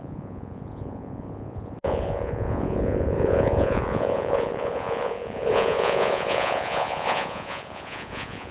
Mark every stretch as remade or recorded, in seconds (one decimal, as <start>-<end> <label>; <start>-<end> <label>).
0.0-8.5 remade